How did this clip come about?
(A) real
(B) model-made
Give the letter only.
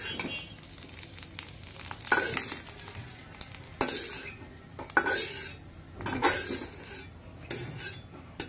A